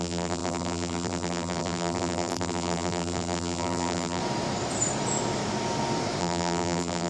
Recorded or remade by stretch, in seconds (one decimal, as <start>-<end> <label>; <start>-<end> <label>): 0.0-4.2 remade; 4.2-6.2 recorded; 6.2-7.1 remade